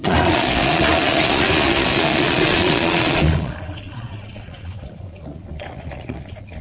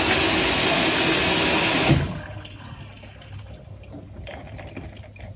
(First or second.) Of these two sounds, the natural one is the second